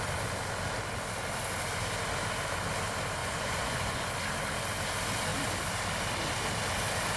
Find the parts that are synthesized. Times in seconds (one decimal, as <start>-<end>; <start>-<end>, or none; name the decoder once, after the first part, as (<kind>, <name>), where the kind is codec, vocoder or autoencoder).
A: 3.2-4.1 (vocoder, Vocos)